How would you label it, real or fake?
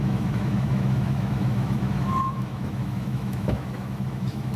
fake